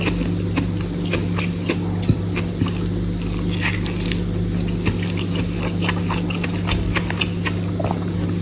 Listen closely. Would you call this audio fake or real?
real